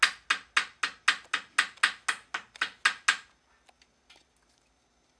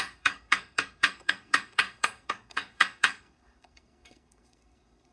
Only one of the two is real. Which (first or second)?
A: first